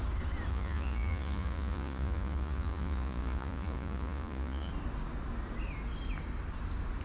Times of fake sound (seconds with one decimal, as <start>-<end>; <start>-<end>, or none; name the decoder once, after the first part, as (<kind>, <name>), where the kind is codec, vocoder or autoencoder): 0.5-4.7 (vocoder, Vocos)

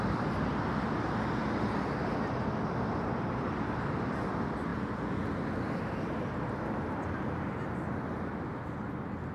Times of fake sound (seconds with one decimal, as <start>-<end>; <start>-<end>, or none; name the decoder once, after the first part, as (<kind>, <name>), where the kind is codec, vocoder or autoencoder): 4.7-5.3 (vocoder, Vocos)